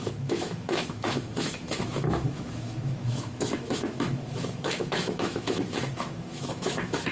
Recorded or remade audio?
remade